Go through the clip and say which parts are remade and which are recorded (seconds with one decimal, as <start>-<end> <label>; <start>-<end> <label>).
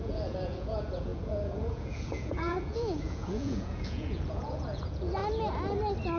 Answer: 0.0-5.2 remade; 5.2-6.2 recorded